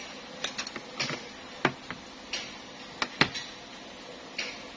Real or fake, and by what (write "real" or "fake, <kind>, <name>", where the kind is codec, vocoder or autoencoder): real